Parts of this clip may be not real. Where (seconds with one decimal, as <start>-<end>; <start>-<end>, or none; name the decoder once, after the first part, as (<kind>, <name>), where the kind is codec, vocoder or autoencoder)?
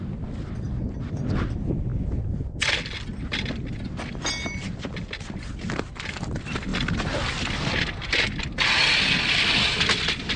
none